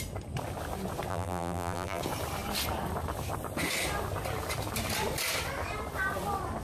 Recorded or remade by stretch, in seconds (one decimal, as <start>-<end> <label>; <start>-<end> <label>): 0.0-1.1 recorded; 1.1-2.0 remade; 2.0-6.6 recorded